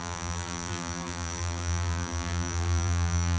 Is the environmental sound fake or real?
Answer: fake